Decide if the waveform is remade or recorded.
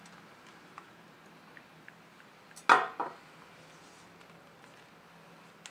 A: recorded